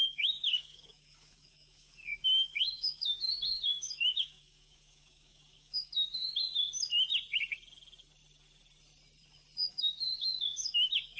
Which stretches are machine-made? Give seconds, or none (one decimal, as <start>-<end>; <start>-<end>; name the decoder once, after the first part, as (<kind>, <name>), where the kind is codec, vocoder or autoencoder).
0.0-6.2 (codec, DAC); 9.7-11.2